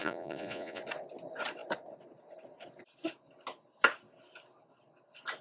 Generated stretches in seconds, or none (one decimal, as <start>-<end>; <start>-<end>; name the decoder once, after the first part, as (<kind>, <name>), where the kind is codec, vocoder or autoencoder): 0.0-0.8 (vocoder, Vocos)